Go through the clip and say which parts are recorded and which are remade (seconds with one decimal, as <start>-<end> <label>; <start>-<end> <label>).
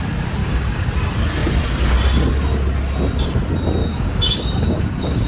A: 0.0-0.4 recorded; 0.4-0.9 remade; 0.9-3.8 recorded; 3.8-5.3 remade